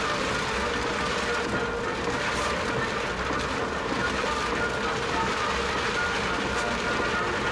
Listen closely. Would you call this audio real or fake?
real